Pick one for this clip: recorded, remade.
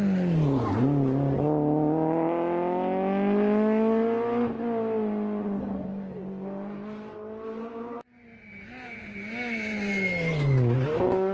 recorded